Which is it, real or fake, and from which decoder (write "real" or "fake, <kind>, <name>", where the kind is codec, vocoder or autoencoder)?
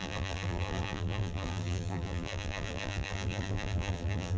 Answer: fake, vocoder, BigVGAN v2